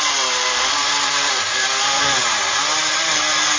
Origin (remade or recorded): remade